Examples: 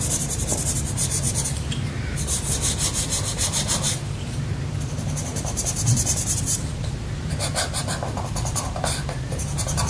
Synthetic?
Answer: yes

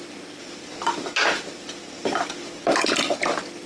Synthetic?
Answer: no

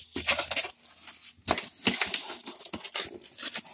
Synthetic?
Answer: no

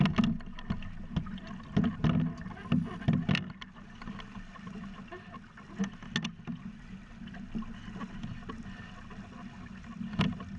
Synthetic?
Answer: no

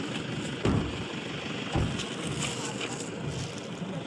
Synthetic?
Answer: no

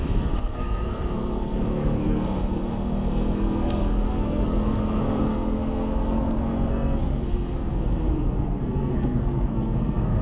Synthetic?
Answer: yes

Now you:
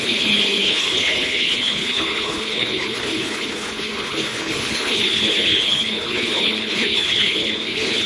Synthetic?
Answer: yes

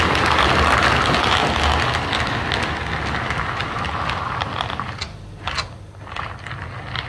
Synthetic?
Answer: no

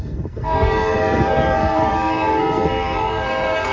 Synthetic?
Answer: yes